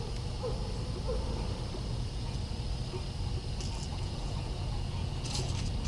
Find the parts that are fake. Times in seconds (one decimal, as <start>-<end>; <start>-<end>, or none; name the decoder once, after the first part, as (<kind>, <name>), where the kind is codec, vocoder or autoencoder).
1.9-2.4 (vocoder, Vocos); 3.9-5.5